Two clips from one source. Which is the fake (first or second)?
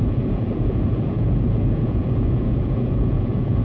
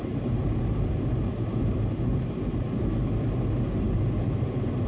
first